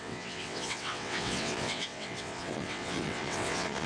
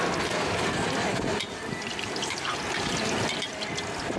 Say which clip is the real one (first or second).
second